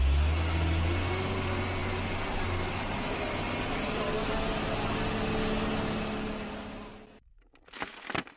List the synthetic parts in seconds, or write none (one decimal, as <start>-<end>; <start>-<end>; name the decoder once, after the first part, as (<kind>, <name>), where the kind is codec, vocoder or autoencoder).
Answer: none